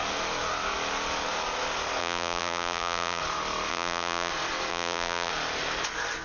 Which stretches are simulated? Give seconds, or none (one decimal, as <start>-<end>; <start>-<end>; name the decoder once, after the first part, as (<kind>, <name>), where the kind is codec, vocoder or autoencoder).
2.0-3.2 (vocoder, BigVGAN v2); 3.7-4.3; 4.7-5.3

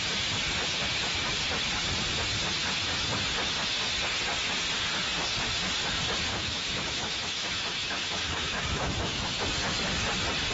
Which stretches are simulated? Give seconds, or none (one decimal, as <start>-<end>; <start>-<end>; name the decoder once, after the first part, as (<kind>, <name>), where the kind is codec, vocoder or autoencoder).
6.3-9.4 (autoencoder, DAC-VAE)

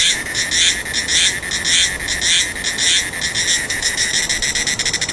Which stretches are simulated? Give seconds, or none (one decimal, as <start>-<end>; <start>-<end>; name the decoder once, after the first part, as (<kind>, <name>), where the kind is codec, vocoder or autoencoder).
0.0-0.4 (autoencoder, DAC-VAE); 3.5-4.1

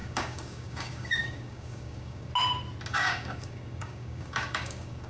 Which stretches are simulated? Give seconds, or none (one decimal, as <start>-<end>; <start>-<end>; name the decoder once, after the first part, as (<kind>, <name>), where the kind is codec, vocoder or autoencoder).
0.0-2.3 (codec, DAC); 2.9-5.1

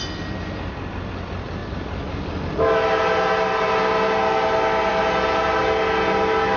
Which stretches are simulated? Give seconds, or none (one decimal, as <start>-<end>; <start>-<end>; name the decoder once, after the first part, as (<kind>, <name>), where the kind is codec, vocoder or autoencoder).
none

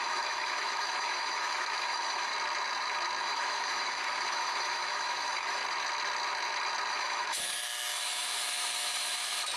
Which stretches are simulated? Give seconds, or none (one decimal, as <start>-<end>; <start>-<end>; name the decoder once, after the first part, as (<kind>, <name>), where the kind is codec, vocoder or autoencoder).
0.0-2.3 (autoencoder, DAC-VAE); 3.2-5.6; 6.9-9.6

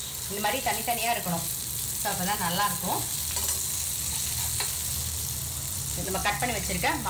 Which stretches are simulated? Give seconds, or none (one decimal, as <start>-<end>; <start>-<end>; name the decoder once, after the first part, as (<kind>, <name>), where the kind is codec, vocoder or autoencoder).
none